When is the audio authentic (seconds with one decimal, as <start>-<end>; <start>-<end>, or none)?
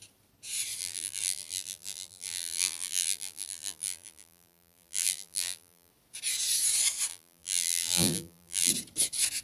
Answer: 0.0-0.8; 5.9-7.1; 8.7-9.4